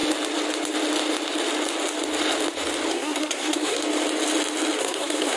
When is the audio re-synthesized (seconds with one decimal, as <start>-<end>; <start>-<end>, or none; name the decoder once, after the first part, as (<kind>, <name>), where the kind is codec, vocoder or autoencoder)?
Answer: 2.9-3.8 (codec, SNAC); 4.8-5.4